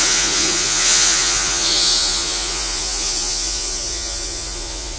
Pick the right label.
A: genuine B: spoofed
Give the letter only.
B